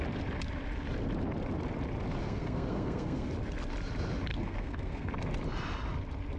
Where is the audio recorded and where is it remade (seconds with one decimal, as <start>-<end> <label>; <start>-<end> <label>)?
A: 0.0-2.2 recorded; 2.2-3.3 remade; 3.3-4.3 recorded; 4.3-5.1 remade; 5.1-6.4 recorded

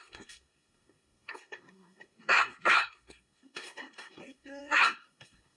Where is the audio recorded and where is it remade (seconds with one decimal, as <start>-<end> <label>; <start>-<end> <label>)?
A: 0.0-5.6 remade

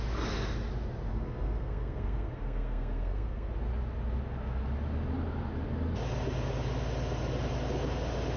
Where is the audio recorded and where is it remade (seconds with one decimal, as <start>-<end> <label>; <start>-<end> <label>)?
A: 0.0-1.1 recorded; 1.1-3.5 remade; 3.5-8.4 recorded

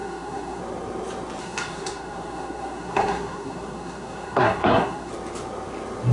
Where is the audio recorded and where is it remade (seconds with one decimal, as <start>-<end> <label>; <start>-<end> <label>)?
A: 0.0-0.6 remade; 0.6-1.4 recorded; 1.4-5.1 remade; 5.1-6.1 recorded

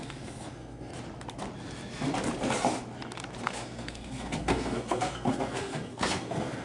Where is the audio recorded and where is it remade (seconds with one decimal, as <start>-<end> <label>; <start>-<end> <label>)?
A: 0.0-0.9 remade; 0.9-3.4 recorded; 3.4-6.6 remade

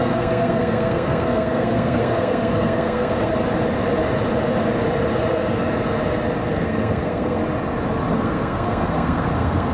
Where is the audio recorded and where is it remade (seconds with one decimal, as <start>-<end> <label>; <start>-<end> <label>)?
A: 0.0-3.3 remade; 3.3-6.5 recorded; 6.5-7.4 remade; 7.4-8.1 recorded; 8.1-9.7 remade

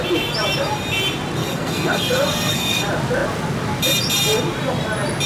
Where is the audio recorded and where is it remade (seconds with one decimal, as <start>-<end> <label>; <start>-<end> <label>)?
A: 0.0-1.4 recorded; 1.4-2.8 remade; 2.8-5.3 recorded